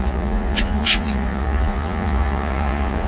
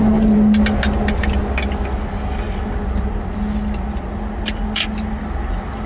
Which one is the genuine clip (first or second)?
second